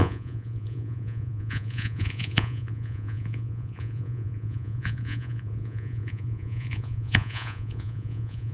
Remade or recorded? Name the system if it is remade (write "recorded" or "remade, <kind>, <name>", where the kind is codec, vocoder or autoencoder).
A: remade, vocoder, Vocos